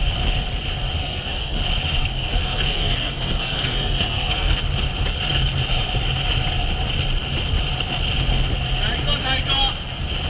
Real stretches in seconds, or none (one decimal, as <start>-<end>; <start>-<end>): 0.0-1.0; 1.6-2.0; 4.6-10.3